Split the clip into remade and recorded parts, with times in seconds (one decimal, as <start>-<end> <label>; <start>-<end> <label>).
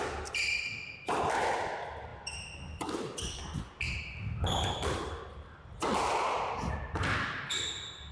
0.0-8.1 recorded